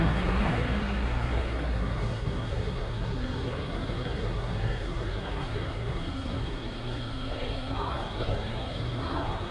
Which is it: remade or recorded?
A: remade